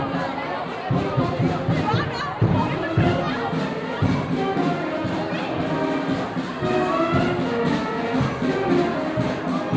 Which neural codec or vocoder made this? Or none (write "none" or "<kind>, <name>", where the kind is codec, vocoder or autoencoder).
none